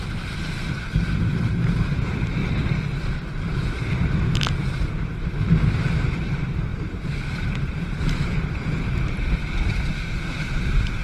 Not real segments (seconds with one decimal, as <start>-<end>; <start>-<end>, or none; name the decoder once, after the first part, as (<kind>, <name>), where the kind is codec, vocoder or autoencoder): 0.0-2.4 (vocoder, BigVGAN v2); 4.5-11.0